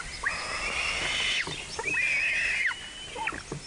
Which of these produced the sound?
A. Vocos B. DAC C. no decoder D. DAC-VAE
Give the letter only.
C